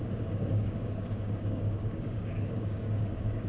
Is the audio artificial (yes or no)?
yes